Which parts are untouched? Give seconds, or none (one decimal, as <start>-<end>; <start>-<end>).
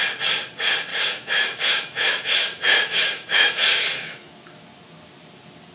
0.0-0.9; 4.3-5.7